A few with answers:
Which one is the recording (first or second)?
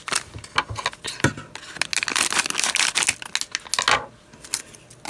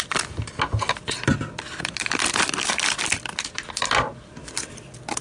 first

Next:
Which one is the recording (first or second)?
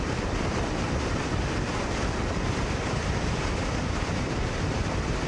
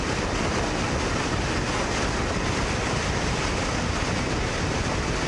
second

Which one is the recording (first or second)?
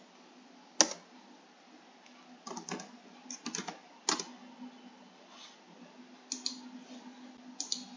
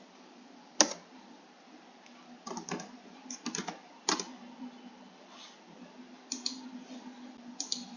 first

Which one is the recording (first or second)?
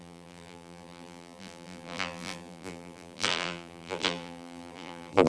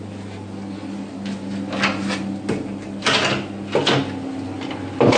second